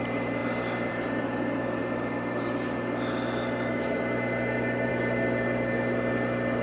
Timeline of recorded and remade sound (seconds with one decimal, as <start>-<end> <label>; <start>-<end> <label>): 0.0-6.6 recorded